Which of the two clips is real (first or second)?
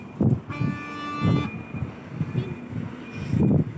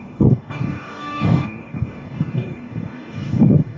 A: first